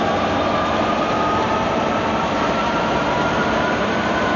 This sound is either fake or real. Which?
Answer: fake